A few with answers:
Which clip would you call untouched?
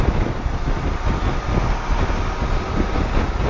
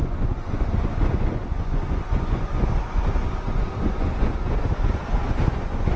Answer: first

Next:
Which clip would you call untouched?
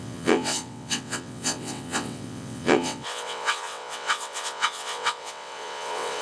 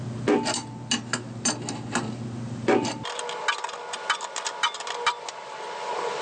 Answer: second